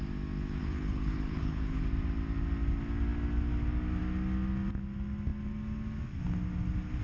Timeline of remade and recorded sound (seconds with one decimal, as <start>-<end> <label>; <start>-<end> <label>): 0.0-0.6 recorded; 0.6-1.8 remade; 1.8-7.0 recorded